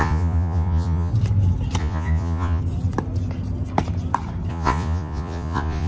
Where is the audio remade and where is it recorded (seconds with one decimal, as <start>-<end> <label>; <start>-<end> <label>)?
0.0-1.1 remade; 1.1-1.8 recorded; 1.8-2.6 remade; 2.6-4.5 recorded; 4.5-5.9 remade